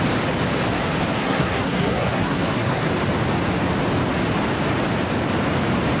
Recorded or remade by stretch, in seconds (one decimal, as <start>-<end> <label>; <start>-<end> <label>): 0.0-1.2 recorded; 1.2-2.9 remade; 2.9-6.0 recorded